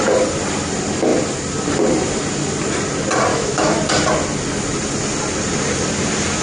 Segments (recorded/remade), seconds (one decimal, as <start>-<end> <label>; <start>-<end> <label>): 0.0-3.3 recorded; 3.3-3.8 remade; 3.8-6.4 recorded